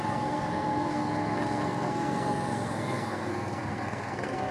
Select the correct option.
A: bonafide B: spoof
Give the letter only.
B